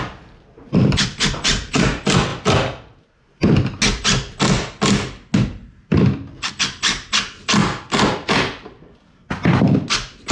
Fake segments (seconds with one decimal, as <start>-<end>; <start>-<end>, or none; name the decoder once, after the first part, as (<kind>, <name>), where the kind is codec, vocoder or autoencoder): 0.5-1.9 (vocoder, BigVGAN v2)